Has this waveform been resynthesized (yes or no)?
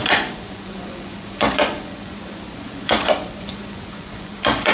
yes